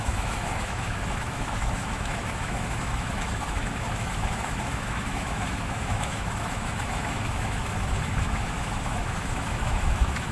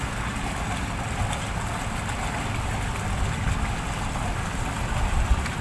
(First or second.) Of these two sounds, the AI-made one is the first